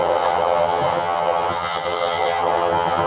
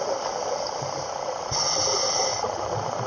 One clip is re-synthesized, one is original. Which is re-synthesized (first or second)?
first